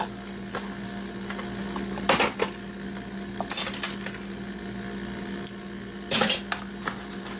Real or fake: real